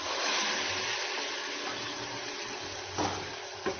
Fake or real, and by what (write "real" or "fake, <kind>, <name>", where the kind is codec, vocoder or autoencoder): real